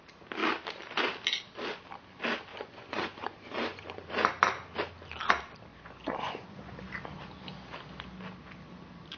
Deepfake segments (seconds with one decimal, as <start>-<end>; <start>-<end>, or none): 2.5-4.1; 5.7-6.8

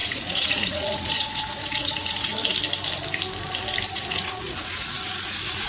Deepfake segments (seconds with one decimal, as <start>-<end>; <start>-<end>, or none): 0.0-2.3; 3.9-5.7

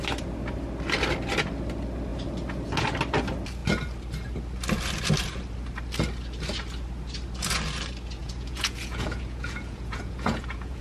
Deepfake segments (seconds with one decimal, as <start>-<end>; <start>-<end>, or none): 8.2-10.8

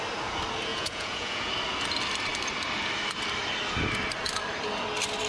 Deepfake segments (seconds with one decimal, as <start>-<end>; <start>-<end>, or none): 0.7-1.5

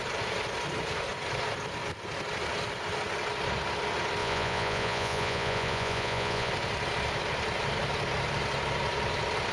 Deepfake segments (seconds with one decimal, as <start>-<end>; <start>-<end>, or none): 4.2-6.5

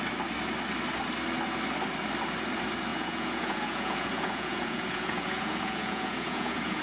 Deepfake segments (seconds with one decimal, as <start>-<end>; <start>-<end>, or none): 2.9-6.8

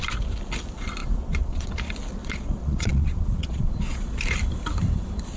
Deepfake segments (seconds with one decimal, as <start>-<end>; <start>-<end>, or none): 1.0-1.7; 2.2-4.1

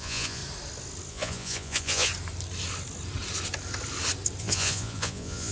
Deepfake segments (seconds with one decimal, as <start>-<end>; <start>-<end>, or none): 0.0-0.4; 1.1-2.1; 4.4-5.5